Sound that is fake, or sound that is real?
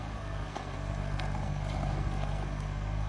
fake